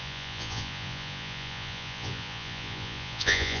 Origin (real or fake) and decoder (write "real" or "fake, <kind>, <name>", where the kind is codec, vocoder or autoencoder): fake, vocoder, Vocos